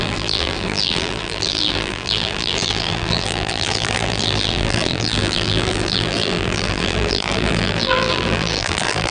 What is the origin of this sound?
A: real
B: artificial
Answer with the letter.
B